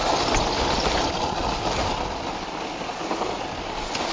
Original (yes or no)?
yes